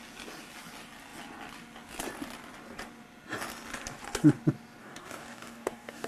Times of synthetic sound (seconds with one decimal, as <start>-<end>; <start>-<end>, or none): 4.8-6.1